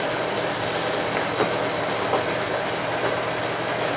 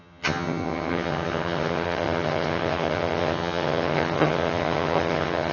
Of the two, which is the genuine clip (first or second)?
first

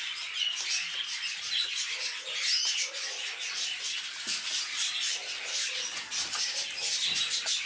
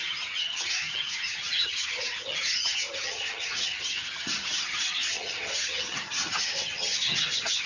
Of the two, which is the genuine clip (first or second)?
first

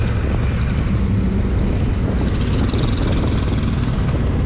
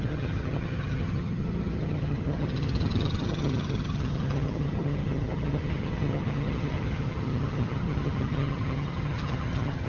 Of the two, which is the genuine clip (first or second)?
first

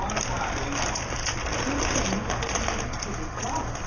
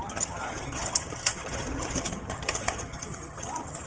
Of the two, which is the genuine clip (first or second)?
first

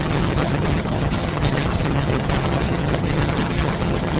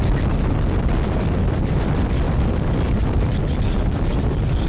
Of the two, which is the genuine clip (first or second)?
second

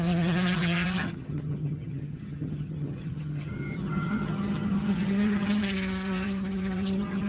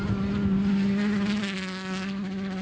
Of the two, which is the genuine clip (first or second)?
second